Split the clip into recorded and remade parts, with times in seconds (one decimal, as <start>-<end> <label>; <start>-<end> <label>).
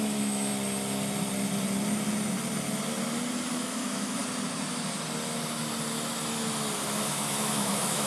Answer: 0.0-0.5 remade; 0.5-3.5 recorded; 3.5-4.2 remade; 4.2-7.1 recorded; 7.1-8.1 remade